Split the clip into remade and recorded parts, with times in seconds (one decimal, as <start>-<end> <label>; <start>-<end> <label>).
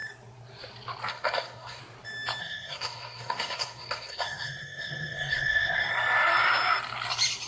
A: 0.0-1.1 recorded; 1.1-1.8 remade; 1.8-2.4 recorded; 2.4-5.9 remade; 5.9-7.5 recorded